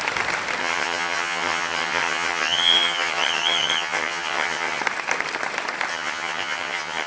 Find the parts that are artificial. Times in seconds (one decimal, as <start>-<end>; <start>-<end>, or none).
0.6-4.8; 5.9-7.1

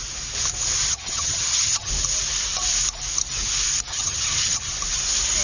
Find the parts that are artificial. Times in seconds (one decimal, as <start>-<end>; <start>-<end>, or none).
0.9-1.9; 3.9-4.7

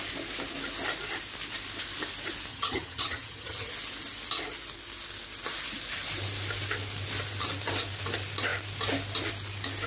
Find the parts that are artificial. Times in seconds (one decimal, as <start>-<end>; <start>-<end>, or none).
2.5-3.7

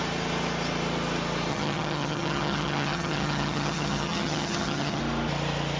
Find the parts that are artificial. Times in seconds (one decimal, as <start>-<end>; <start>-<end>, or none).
1.5-5.0

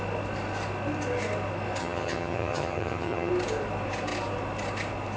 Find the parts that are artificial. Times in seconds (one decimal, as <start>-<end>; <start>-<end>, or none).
1.8-3.3

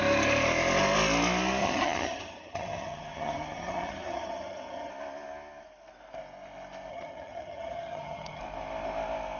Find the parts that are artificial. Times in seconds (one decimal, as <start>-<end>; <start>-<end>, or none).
1.6-4.9; 6.9-8.4

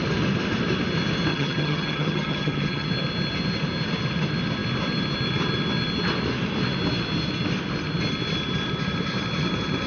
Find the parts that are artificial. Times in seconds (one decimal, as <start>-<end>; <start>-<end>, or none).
1.3-2.9

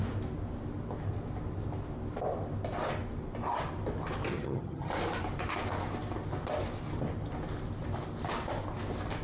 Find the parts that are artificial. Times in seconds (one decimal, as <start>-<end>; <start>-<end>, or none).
4.3-4.9